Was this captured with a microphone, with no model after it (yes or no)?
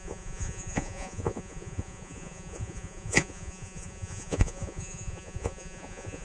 no